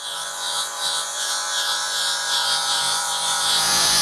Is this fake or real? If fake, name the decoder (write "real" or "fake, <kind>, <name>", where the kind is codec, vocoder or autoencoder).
fake, vocoder, Vocos